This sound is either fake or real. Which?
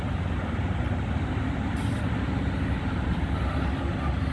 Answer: real